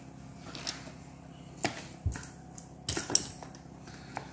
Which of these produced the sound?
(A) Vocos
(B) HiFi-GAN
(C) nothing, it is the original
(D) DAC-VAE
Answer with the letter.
C